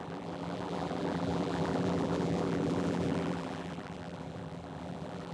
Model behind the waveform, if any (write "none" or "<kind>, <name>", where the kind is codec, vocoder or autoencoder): vocoder, BigVGAN v2